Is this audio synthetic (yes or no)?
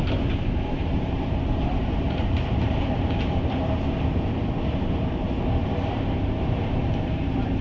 yes